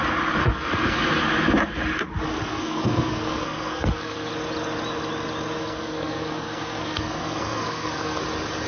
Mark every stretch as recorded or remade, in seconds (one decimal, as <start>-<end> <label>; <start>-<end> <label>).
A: 0.0-0.4 recorded; 0.4-1.0 remade; 1.0-2.5 recorded; 2.5-4.3 remade; 4.3-5.6 recorded; 5.6-8.2 remade; 8.2-8.7 recorded